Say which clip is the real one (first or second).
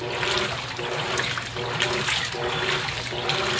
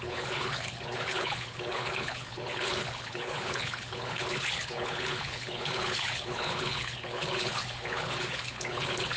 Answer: first